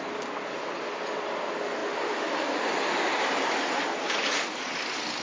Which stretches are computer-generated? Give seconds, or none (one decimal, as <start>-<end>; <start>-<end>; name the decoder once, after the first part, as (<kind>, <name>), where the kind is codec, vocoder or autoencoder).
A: none

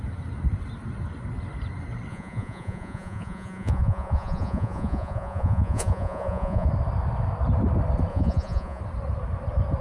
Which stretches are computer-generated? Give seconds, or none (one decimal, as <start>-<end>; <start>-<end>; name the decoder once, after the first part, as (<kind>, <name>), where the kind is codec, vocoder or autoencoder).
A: 2.1-6.7 (vocoder, Vocos); 8.1-8.8

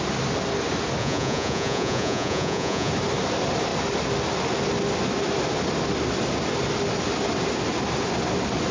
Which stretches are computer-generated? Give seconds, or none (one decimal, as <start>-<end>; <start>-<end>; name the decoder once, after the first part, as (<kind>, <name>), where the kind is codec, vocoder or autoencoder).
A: 1.0-2.9 (vocoder, Vocos)

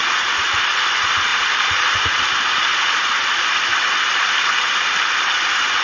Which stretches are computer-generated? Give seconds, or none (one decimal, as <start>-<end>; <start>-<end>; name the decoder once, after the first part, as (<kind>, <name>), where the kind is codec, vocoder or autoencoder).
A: 1.3-1.9 (vocoder, BigVGAN v2)

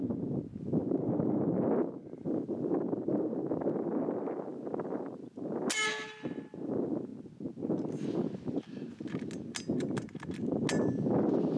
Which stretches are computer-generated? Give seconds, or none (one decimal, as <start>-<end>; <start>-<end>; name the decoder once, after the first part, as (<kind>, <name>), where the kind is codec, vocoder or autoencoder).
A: none

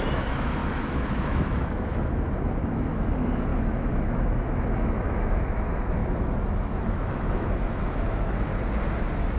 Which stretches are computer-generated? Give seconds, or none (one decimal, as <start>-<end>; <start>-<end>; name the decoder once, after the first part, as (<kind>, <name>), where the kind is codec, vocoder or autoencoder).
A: 0.0-8.5 (autoencoder, DAC-VAE)

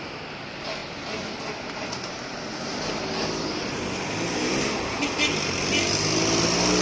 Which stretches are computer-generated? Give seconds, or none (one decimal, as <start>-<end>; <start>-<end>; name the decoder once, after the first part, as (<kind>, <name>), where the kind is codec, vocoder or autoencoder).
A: none